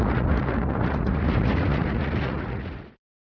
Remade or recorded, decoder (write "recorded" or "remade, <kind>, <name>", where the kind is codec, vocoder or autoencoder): remade, vocoder, Vocos